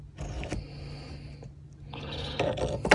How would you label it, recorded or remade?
recorded